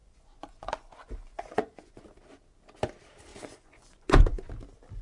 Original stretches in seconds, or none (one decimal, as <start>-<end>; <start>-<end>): 2.0-3.3; 4.5-5.0